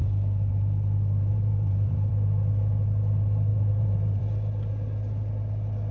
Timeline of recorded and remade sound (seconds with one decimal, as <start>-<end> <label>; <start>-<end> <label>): 0.0-1.3 recorded; 1.3-2.1 remade; 2.1-3.5 recorded; 3.5-4.2 remade; 4.2-5.9 recorded

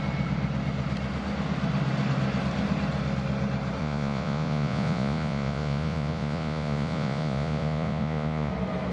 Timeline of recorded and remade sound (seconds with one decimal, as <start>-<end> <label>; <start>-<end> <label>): 0.0-3.8 recorded; 3.8-8.5 remade; 8.5-8.9 recorded

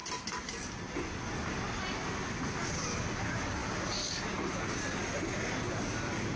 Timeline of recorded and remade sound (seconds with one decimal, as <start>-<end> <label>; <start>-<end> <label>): 0.0-6.4 recorded

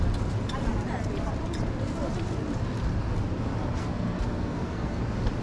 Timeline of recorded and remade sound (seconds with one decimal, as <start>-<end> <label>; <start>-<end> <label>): 0.0-3.8 recorded; 3.8-5.0 remade; 5.0-5.4 recorded

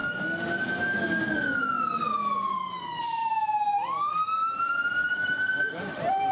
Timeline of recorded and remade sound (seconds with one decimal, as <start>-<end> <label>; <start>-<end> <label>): 0.0-1.6 remade; 1.6-5.0 recorded; 5.0-5.8 remade; 5.8-6.3 recorded